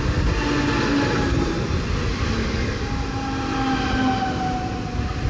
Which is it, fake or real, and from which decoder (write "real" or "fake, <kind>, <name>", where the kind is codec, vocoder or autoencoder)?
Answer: real